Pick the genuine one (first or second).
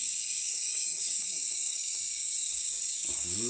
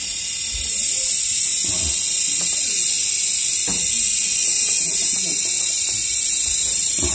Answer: second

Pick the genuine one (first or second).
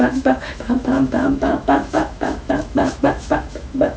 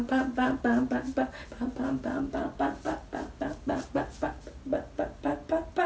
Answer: second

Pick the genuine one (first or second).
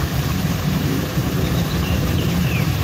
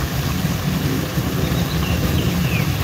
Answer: second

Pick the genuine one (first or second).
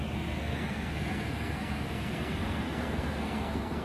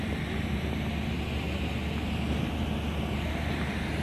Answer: second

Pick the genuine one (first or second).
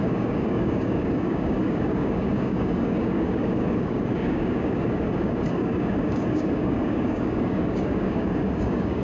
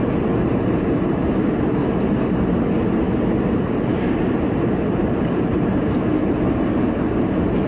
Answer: second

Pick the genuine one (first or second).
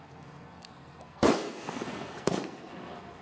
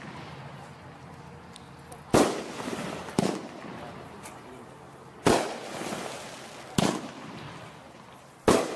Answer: second